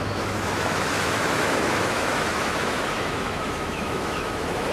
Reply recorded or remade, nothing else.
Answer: remade